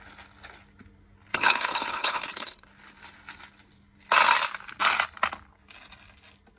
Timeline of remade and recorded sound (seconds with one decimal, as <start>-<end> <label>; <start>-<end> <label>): 0.0-1.3 recorded; 1.3-2.7 remade; 2.7-6.6 recorded